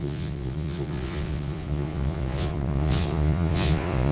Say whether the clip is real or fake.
fake